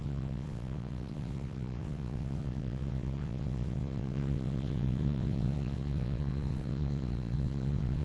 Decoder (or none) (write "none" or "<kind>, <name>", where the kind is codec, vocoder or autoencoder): vocoder, WaveNeXt